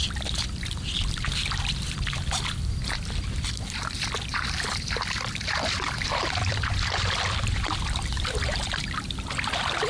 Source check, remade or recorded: remade